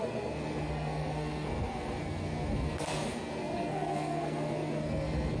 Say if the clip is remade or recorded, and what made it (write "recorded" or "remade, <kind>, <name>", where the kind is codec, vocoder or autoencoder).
remade, codec, SNAC